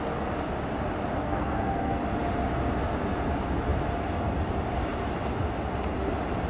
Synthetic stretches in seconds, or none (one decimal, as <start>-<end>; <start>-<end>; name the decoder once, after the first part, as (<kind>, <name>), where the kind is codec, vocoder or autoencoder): 1.2-2.0 (codec, SNAC)